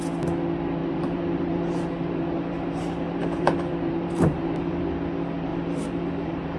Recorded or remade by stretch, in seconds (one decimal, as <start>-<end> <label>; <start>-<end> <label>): 0.0-0.8 recorded; 0.8-4.8 remade; 4.8-5.5 recorded; 5.5-6.6 remade